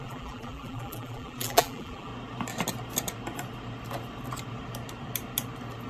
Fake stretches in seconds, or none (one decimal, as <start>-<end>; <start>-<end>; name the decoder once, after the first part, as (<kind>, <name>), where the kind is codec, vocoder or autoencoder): 0.0-2.1 (vocoder, BigVGAN v2)